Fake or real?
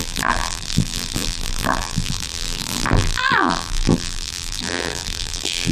fake